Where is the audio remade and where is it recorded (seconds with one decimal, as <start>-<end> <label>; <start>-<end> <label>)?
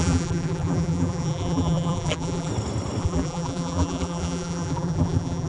0.0-2.5 remade; 2.5-3.0 recorded; 3.0-5.5 remade